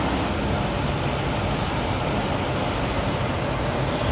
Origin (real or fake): real